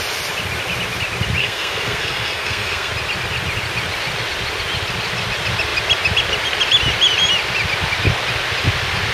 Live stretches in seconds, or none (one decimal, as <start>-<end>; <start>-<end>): 0.0-1.4; 2.9-9.1